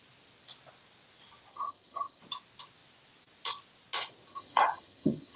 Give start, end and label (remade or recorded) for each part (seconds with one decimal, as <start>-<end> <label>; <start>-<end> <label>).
0.0-1.5 recorded; 1.5-2.2 remade; 2.2-4.3 recorded; 4.3-5.4 remade